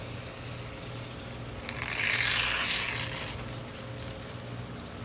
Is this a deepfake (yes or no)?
no